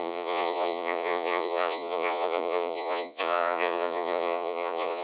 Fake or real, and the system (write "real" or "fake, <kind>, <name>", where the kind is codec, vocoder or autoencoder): fake, vocoder, Vocos